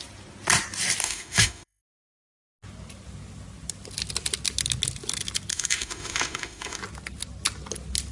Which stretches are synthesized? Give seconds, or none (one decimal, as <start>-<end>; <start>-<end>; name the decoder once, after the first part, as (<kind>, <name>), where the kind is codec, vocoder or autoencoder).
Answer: 1.0-1.8 (autoencoder, DAC-VAE); 5.5-6.8